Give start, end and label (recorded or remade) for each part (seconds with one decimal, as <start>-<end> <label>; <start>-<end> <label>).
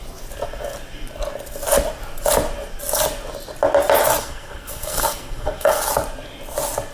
0.0-4.2 recorded; 4.2-5.9 remade; 5.9-6.9 recorded